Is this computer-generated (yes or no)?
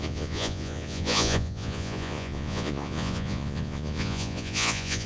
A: yes